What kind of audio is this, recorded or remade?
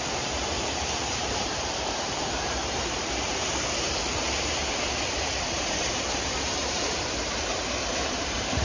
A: remade